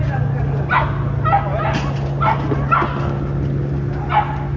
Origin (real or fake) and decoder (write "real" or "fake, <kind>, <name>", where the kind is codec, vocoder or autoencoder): real